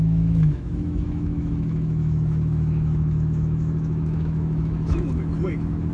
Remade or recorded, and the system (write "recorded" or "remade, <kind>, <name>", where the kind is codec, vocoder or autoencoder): remade, autoencoder, DAC-VAE